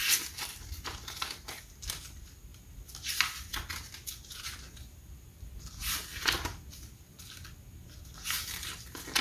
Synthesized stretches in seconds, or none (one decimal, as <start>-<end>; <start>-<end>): none